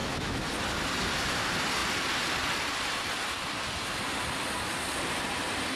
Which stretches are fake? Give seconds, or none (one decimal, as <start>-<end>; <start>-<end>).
0.0-0.5